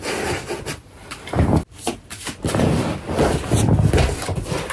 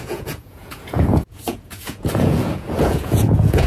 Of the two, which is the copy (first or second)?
second